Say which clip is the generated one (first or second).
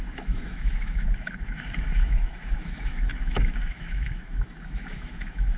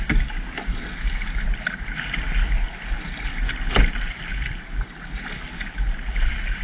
first